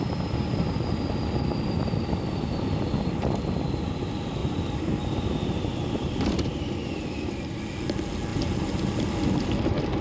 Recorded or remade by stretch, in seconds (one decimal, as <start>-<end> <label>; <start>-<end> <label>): 0.0-4.4 recorded; 4.4-7.6 remade; 7.6-8.3 recorded; 8.3-10.0 remade